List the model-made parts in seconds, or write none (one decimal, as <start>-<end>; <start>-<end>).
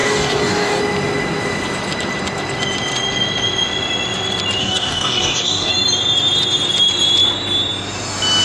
0.0-0.8; 4.6-5.7